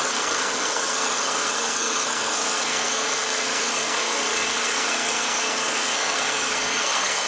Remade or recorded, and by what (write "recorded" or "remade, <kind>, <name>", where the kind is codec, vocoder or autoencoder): remade, codec, SNAC